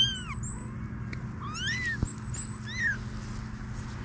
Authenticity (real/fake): real